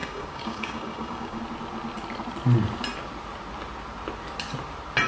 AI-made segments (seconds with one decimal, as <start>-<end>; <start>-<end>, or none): 0.0-1.4